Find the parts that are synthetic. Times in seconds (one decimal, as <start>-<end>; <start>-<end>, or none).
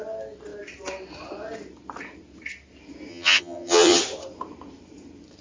3.1-4.0